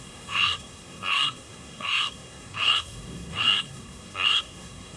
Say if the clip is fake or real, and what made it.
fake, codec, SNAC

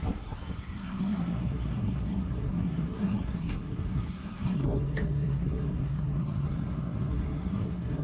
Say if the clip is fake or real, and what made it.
fake, codec, SNAC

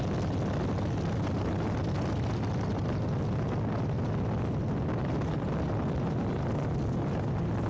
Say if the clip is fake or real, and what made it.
real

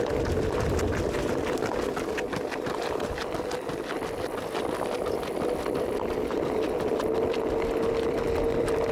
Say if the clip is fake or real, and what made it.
real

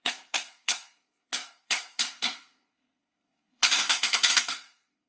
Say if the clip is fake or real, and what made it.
fake, codec, SNAC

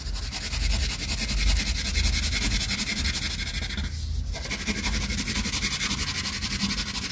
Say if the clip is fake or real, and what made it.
real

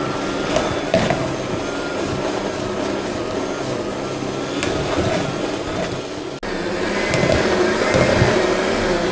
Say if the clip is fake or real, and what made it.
real